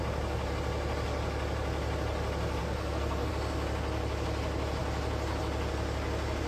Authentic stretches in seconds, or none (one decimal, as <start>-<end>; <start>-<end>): 0.0-2.6; 3.3-6.5